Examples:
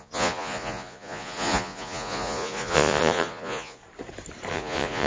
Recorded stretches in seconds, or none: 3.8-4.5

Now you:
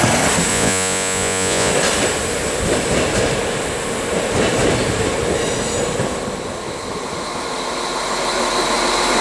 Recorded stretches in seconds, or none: 0.0-0.5; 1.7-9.2

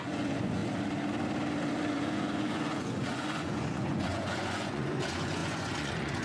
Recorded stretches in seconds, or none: 0.6-1.9

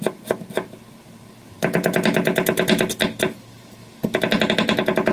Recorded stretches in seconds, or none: 0.0-5.1

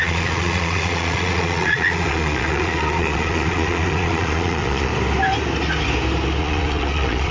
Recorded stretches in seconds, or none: 4.9-6.4